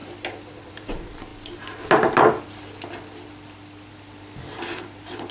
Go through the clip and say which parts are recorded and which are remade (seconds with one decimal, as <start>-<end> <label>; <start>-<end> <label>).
0.0-0.6 recorded; 0.6-1.3 remade; 1.3-3.9 recorded; 3.9-5.3 remade

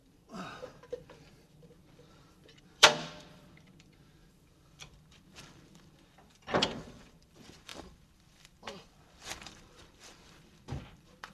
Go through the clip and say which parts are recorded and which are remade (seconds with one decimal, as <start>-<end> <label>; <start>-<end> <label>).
0.0-11.3 remade

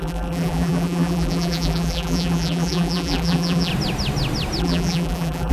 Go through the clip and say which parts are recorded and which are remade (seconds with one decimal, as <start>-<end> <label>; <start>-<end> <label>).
0.0-3.7 remade; 3.7-4.6 recorded; 4.6-5.5 remade

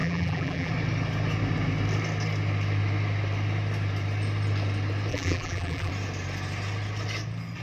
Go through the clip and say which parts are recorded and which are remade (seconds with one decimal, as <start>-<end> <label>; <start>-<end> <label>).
0.0-0.7 remade; 0.7-5.1 recorded; 5.1-5.9 remade; 5.9-7.6 recorded